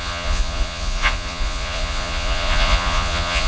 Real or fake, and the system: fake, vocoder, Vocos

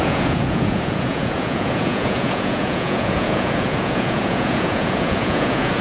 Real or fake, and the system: fake, vocoder, Vocos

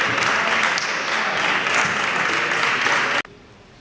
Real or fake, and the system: real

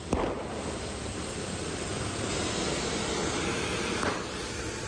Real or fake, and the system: real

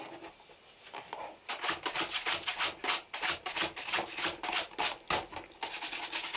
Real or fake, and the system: real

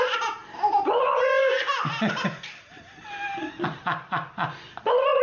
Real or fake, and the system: real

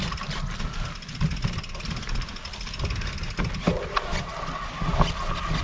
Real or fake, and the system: real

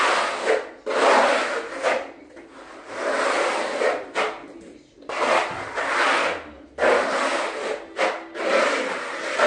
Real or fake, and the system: real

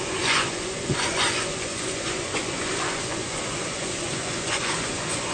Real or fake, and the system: fake, vocoder, Vocos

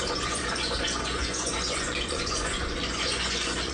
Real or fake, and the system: fake, vocoder, Vocos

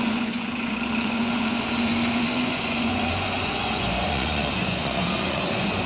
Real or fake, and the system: fake, vocoder, Vocos